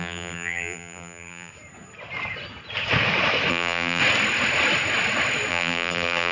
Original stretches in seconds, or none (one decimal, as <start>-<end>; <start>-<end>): 1.5-3.5; 4.0-5.5

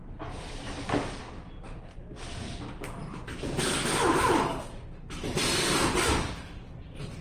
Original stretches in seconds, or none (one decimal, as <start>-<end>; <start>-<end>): 0.0-7.2

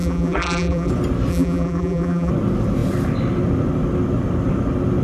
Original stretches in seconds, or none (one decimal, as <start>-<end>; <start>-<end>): 0.9-1.3; 2.3-5.0

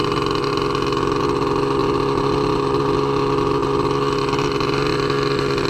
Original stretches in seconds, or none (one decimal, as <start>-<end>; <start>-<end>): 0.0-5.7

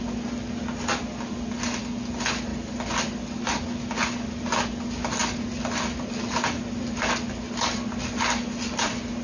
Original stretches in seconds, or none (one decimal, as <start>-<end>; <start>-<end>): 0.0-9.2

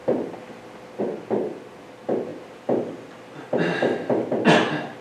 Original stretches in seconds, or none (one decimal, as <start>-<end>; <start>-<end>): 0.0-5.0

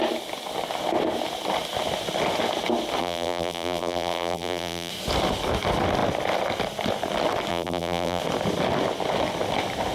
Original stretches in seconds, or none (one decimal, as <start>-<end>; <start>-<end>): 0.0-3.0; 4.9-7.5; 8.2-9.9